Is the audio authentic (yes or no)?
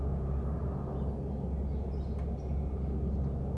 yes